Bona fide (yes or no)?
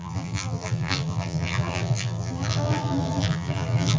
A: no